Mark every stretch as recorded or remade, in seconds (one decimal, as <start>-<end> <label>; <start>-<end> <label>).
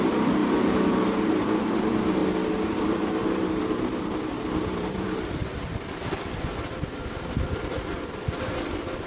0.0-9.1 remade